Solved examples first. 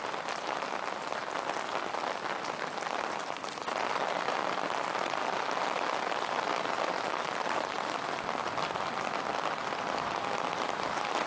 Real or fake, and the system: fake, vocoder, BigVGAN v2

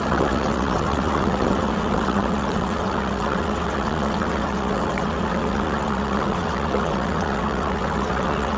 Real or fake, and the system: fake, vocoder, WaveNeXt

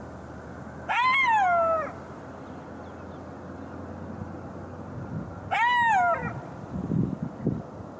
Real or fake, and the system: real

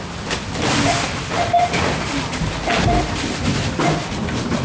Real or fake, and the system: real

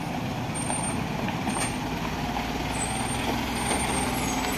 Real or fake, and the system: real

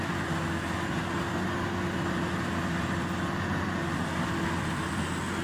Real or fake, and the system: real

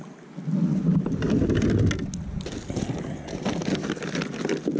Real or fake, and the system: real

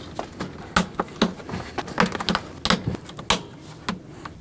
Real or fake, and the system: real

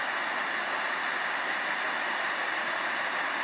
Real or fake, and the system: real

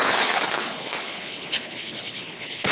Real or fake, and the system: fake, codec, HILCodec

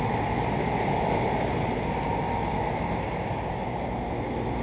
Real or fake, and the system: real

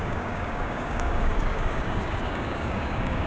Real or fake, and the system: fake, codec, DAC